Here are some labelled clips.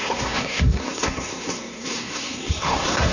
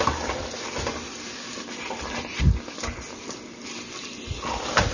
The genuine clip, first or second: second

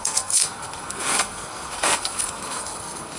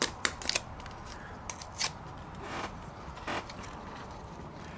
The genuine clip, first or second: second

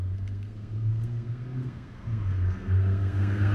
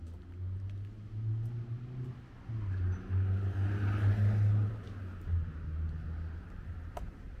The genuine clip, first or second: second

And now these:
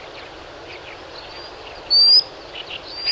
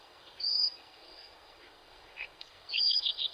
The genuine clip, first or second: first